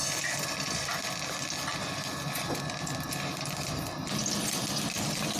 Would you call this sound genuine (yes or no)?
yes